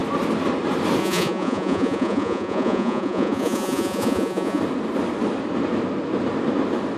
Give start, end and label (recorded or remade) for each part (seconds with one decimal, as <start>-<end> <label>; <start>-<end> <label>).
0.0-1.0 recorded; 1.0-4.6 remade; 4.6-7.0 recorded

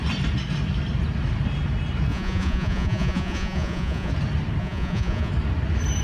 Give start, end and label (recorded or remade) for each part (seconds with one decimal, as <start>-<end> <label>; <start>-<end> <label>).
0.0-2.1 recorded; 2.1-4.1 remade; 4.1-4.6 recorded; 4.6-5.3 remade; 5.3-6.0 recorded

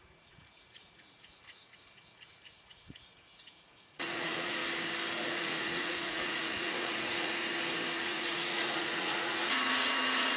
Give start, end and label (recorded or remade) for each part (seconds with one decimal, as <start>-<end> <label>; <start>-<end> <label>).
0.0-4.6 remade; 4.6-5.3 recorded; 5.3-7.5 remade; 7.5-8.0 recorded; 8.0-10.4 remade

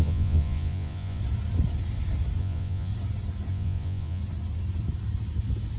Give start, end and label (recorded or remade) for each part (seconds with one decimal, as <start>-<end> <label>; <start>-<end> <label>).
0.0-1.2 remade; 1.2-2.4 recorded; 2.4-2.9 remade; 2.9-3.5 recorded; 3.5-4.2 remade; 4.2-5.8 recorded

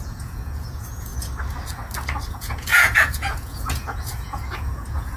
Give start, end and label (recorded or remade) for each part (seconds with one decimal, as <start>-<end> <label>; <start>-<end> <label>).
0.0-1.1 remade; 1.1-2.3 recorded; 2.3-5.2 remade

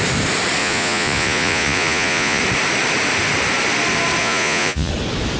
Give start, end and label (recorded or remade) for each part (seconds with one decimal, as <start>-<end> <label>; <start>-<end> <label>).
0.0-0.6 recorded; 0.6-2.4 remade; 2.4-4.2 recorded; 4.2-4.9 remade; 4.9-5.4 recorded

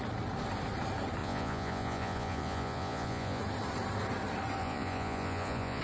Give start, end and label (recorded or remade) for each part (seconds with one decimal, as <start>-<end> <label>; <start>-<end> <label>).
0.0-1.2 recorded; 1.2-3.4 remade; 3.4-4.6 recorded; 4.6-5.8 remade

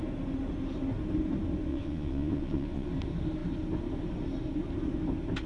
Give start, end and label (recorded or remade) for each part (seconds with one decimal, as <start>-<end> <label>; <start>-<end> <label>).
0.0-1.7 recorded; 1.7-2.9 remade; 2.9-5.5 recorded